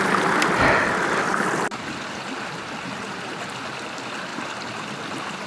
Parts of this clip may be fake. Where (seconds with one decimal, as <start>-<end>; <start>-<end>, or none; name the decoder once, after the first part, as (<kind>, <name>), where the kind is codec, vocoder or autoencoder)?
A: none